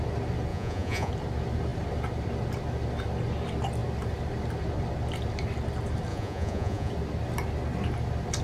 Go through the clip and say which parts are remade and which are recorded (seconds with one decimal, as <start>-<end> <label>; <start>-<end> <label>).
0.0-0.5 recorded; 0.5-1.1 remade; 1.1-6.1 recorded; 6.1-6.9 remade; 6.9-8.4 recorded